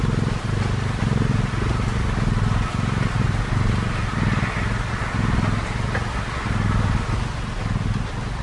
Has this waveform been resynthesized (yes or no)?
no